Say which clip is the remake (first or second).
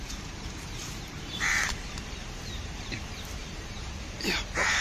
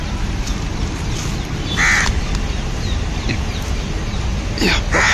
first